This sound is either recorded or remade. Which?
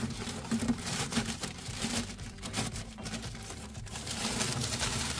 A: remade